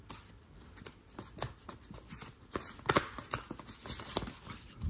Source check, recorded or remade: recorded